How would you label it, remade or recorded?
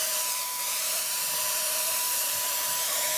remade